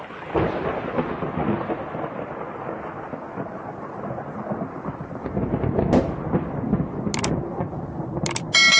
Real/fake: real